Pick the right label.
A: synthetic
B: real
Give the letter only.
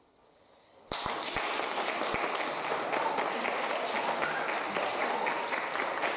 B